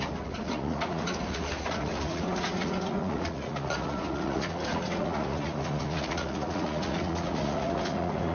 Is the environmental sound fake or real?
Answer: fake